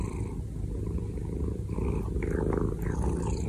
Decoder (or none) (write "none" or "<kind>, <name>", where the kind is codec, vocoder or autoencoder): none